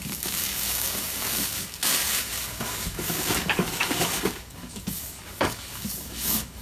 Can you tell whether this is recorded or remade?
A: remade